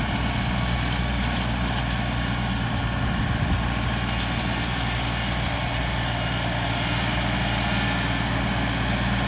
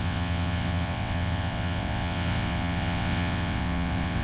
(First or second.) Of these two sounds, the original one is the first